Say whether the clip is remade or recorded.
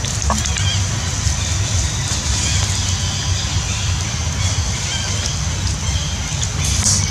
recorded